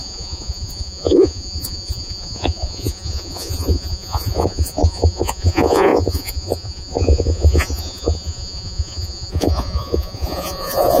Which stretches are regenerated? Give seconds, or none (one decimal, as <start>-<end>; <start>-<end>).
0.0-11.0